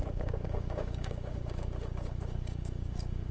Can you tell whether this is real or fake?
fake